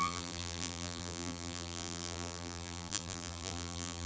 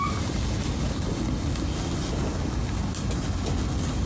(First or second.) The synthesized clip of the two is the first